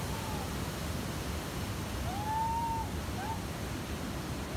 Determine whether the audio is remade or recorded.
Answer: recorded